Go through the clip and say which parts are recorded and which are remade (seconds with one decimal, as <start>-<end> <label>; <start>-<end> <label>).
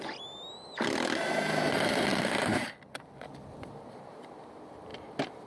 0.0-5.5 recorded